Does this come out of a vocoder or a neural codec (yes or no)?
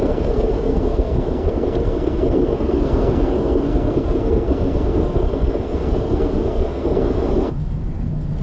yes